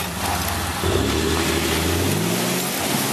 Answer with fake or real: real